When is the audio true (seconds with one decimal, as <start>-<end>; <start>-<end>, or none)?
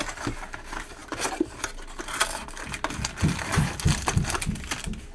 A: 0.0-5.1